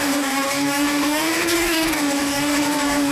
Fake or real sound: fake